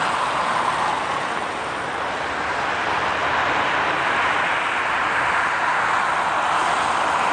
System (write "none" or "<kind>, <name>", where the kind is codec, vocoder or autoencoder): none